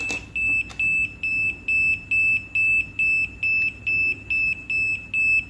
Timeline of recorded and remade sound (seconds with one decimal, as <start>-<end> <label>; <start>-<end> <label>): 0.0-5.5 recorded